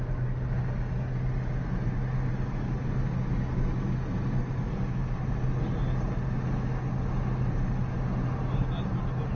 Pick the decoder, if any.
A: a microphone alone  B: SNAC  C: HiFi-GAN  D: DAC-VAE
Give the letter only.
A